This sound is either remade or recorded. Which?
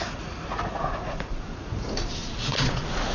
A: remade